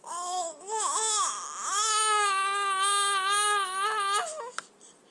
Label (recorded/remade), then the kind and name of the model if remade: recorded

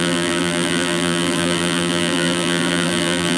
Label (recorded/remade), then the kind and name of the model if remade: remade, vocoder, BigVGAN v2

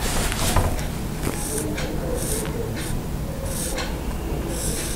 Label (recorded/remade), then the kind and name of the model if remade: recorded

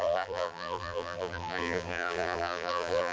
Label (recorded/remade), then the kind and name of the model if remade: remade, vocoder, BigVGAN v2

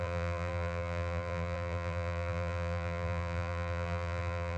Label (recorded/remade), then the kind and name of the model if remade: remade, vocoder, BigVGAN v2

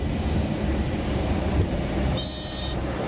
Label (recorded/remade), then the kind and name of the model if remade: remade, vocoder, BigVGAN v2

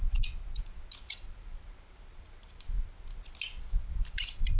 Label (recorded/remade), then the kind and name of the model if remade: recorded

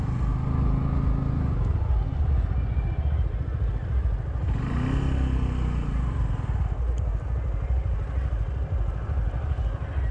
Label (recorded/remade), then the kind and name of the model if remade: recorded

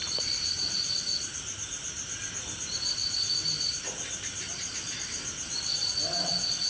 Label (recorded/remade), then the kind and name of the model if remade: remade, vocoder, BigVGAN v2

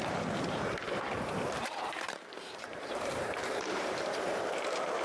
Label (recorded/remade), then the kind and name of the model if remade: remade, vocoder, BigVGAN v2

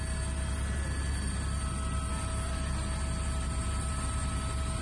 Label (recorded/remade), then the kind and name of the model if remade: recorded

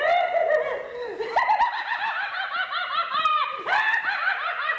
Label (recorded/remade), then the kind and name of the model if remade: remade, vocoder, BigVGAN v2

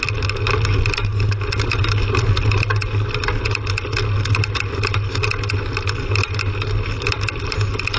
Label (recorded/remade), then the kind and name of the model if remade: recorded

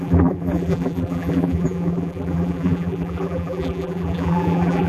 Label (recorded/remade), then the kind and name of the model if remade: remade, vocoder, BigVGAN v2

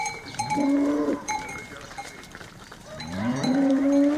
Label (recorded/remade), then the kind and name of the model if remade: remade, vocoder, BigVGAN v2